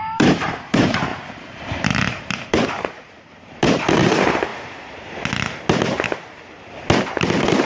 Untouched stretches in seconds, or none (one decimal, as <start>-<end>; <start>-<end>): 4.5-7.1